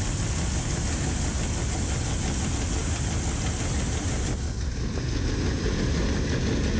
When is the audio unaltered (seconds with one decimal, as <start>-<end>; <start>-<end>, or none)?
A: 0.0-6.8